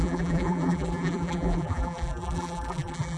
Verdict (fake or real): fake